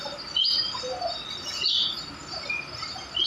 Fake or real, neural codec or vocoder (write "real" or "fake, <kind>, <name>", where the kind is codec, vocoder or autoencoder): real